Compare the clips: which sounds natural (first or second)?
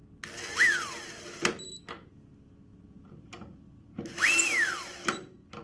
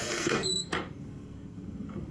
first